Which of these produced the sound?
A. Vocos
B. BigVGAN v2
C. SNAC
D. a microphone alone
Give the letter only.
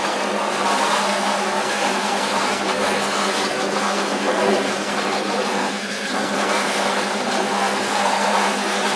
C